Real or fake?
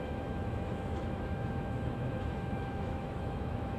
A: fake